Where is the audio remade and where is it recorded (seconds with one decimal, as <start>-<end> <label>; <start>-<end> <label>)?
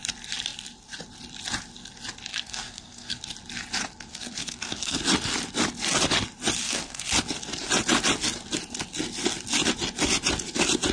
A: 0.0-2.3 recorded; 2.3-3.2 remade; 3.2-4.1 recorded; 4.1-5.0 remade; 5.0-6.6 recorded; 6.6-7.1 remade; 7.1-10.9 recorded